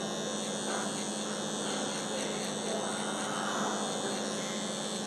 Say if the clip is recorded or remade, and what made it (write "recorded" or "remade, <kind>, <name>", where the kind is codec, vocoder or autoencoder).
recorded